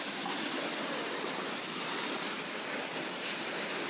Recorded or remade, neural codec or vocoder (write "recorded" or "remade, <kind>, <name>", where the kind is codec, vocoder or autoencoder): recorded